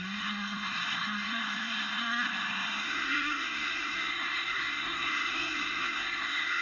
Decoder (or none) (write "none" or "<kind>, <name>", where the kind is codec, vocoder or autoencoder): codec, SNAC